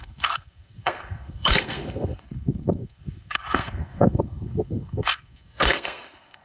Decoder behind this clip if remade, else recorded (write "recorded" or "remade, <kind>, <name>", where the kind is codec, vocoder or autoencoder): remade, codec, SNAC